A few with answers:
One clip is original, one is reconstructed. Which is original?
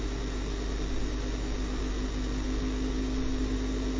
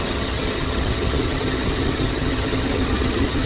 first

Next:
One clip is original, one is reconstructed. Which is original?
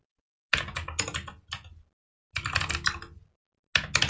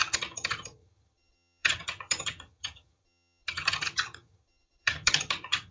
first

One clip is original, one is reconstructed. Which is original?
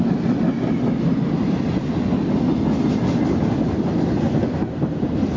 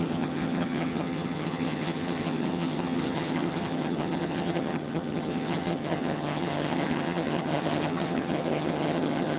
first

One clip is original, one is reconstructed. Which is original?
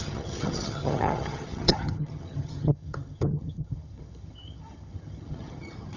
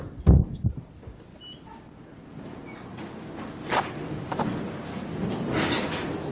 second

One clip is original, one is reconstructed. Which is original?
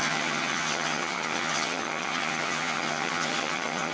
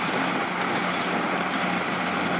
second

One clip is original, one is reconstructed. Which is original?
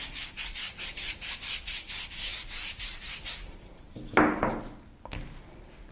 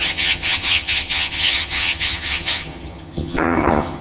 first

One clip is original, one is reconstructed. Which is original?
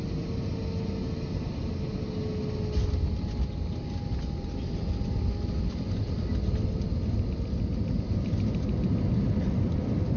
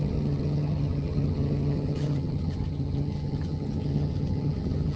first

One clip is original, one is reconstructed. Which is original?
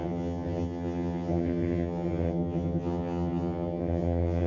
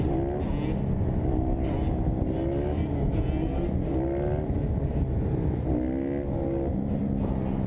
second